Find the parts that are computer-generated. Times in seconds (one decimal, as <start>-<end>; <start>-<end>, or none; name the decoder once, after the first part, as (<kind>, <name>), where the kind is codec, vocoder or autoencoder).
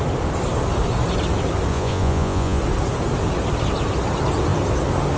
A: 1.7-2.6 (vocoder, Vocos)